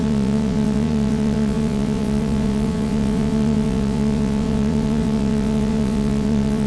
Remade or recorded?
remade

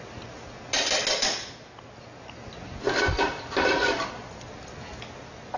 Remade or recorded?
recorded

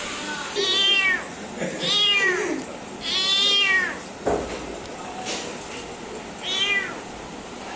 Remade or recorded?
recorded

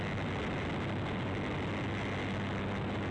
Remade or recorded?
recorded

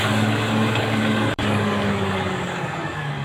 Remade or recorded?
remade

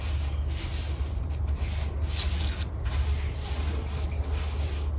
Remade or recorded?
recorded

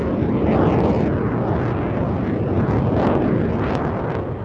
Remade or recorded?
remade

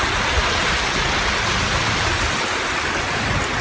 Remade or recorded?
recorded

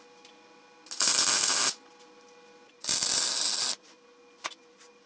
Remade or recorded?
recorded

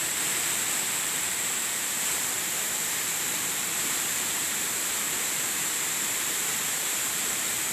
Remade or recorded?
remade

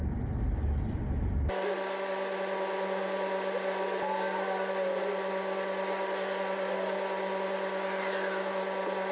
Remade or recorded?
recorded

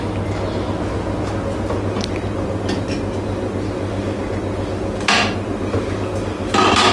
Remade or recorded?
recorded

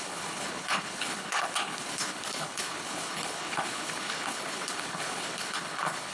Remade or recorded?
remade